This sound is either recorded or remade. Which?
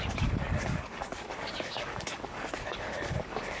remade